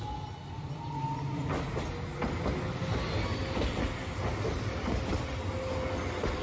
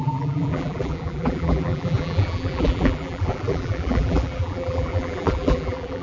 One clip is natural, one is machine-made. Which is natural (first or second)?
first